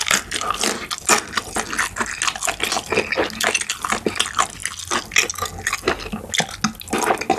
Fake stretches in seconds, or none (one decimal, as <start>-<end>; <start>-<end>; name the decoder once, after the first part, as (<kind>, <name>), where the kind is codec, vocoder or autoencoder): none